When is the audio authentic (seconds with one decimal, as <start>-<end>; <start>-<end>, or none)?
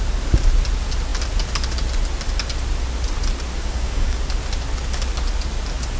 0.0-3.6; 4.2-6.0